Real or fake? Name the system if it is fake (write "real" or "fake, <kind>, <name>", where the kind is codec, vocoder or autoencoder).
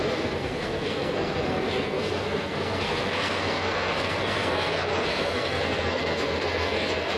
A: fake, codec, SNAC